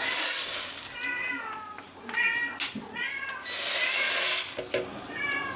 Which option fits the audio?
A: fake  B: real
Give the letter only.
B